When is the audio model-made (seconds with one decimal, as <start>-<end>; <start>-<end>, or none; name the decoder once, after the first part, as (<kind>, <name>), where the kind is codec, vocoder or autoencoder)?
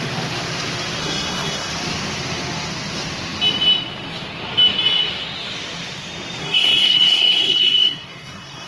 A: 1.0-1.7 (codec, SNAC); 6.4-8.7